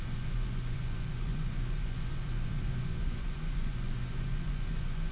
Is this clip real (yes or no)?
no